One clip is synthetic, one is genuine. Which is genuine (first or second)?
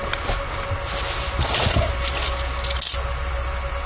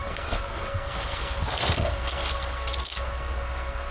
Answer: first